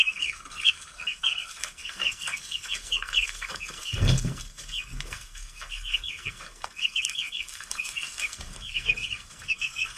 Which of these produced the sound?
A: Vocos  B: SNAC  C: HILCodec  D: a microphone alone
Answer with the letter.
B